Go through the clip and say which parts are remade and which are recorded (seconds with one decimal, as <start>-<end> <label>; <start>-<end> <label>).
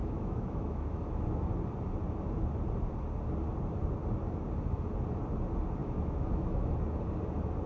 0.0-1.5 remade; 1.5-5.8 recorded; 5.8-6.7 remade; 6.7-7.7 recorded